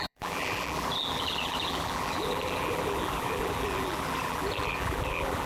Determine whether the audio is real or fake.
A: fake